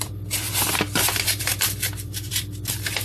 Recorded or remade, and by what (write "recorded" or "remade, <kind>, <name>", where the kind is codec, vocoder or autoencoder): remade, vocoder, BigVGAN v2